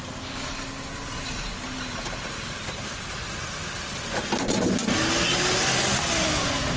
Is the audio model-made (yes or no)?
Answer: no